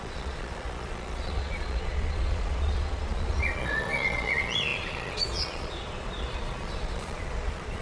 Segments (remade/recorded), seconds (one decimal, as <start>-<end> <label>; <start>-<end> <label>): 0.0-7.8 remade

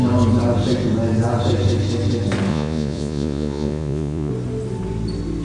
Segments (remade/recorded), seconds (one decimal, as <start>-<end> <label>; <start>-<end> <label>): 0.0-2.5 recorded; 2.5-4.3 remade; 4.3-5.4 recorded

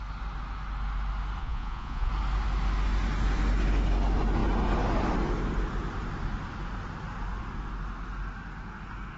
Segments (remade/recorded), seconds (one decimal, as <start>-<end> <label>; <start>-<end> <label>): 0.0-1.4 recorded; 1.4-2.1 remade; 2.1-9.2 recorded

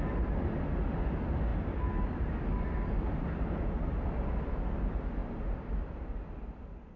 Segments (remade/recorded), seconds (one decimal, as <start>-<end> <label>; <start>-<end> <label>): 0.0-7.0 recorded

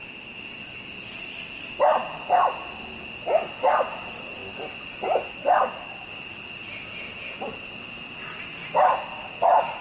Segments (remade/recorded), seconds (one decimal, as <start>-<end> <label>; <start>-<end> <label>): 0.0-9.8 recorded

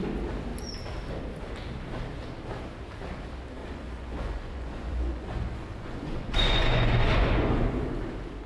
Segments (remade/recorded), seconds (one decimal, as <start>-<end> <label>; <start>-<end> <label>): 0.0-3.6 recorded; 3.6-8.0 remade; 8.0-8.5 recorded

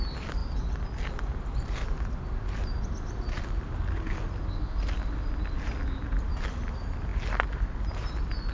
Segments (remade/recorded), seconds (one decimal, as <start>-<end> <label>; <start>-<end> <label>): 0.0-8.5 recorded